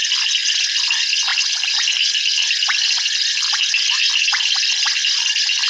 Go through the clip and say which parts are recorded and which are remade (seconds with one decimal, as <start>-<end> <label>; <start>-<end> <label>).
0.0-5.7 remade